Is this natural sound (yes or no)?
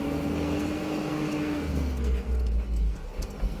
no